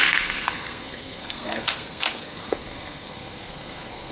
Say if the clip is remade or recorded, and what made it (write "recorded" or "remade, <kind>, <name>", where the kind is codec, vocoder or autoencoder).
remade, codec, SNAC